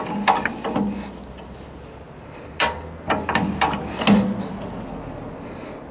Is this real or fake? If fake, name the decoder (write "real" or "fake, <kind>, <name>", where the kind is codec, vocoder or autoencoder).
real